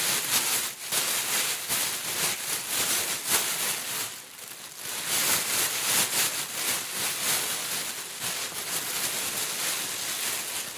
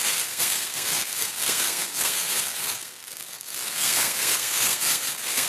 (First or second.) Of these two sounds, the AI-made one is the second